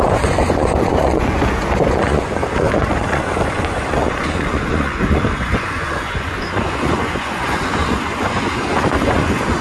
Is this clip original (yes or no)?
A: no